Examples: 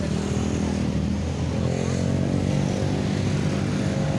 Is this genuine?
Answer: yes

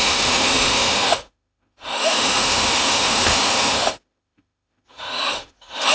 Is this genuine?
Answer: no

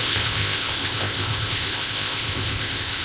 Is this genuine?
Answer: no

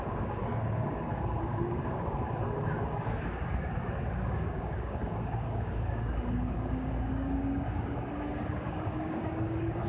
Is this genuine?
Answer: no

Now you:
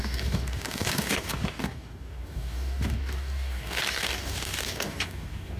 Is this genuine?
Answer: no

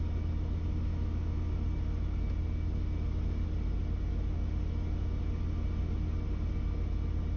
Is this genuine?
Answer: yes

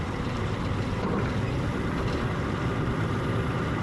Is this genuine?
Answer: yes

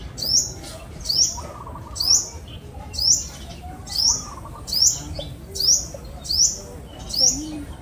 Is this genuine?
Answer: yes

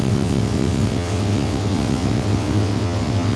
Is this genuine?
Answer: no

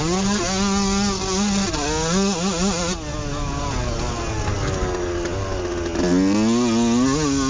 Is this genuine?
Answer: yes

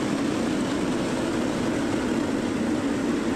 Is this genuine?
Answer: yes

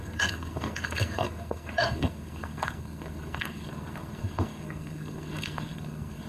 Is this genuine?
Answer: no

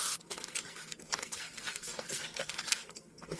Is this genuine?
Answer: no